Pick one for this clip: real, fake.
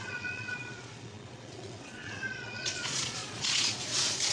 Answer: fake